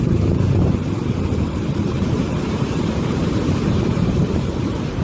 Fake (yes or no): yes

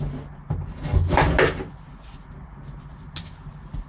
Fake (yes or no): no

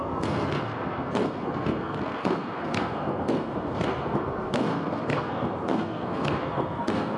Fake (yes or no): yes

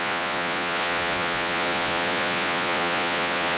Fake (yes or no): yes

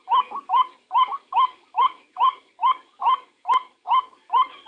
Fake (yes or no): yes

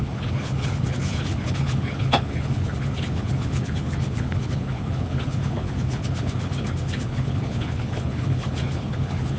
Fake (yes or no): yes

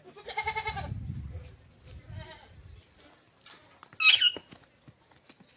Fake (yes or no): no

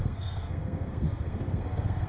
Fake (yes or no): yes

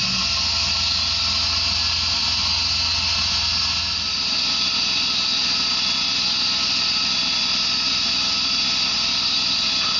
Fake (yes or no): no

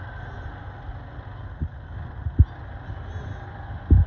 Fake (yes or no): no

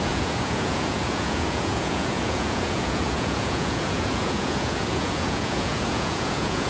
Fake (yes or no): yes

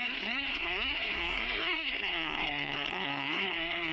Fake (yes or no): yes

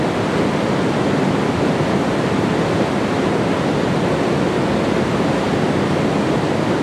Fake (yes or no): no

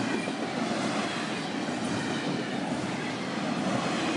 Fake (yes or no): no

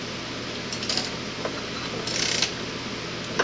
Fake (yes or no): no